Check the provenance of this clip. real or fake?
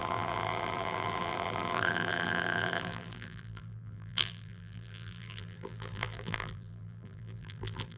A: fake